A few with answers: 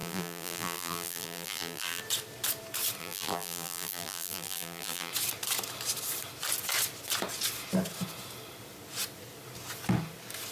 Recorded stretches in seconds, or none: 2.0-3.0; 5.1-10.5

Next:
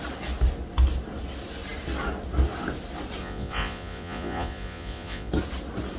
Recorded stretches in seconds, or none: 0.0-3.2; 5.3-6.0

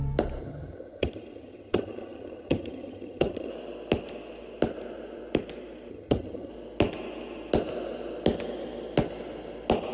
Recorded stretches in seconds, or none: 0.0-0.4; 3.5-5.9; 6.5-9.9

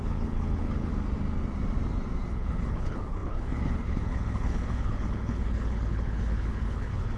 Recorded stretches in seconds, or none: 0.9-2.3

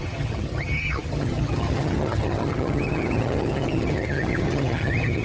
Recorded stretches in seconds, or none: none

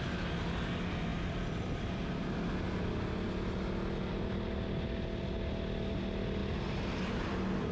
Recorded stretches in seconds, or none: 0.0-7.7

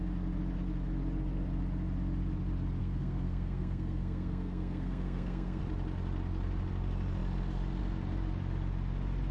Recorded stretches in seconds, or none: 0.0-2.8; 5.6-9.3